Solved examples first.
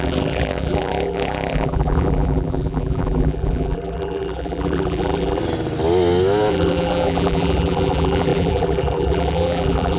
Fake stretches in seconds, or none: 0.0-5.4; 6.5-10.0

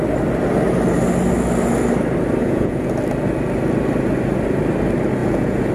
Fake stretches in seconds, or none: 2.4-2.9; 5.2-5.7

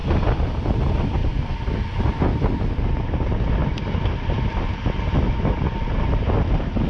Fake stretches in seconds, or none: none

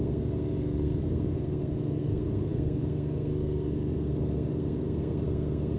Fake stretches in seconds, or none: 0.0-5.8